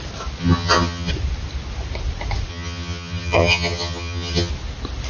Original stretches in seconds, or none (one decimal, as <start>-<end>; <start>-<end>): 0.0-0.4; 1.1-2.5; 4.5-5.1